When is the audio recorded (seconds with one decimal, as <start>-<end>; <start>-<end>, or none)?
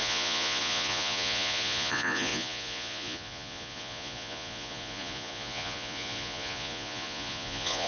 none